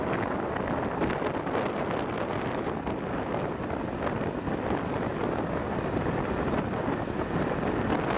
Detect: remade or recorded recorded